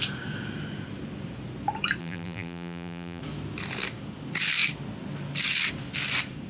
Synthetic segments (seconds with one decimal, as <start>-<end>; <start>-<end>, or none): 2.0-3.2